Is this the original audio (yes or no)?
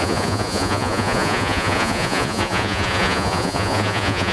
no